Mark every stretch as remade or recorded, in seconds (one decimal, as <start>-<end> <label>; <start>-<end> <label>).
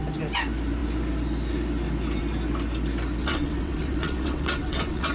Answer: 0.0-3.2 recorded; 3.2-5.1 remade